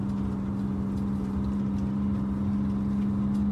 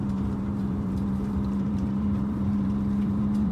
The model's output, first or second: second